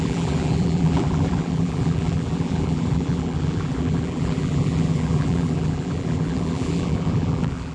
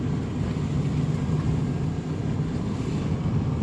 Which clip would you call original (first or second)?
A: second